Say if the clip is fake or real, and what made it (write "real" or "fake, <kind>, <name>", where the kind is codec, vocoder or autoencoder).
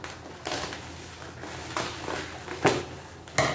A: real